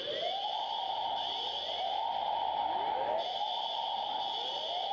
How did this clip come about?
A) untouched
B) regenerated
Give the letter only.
A